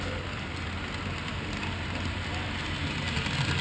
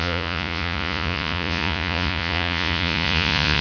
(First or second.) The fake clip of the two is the second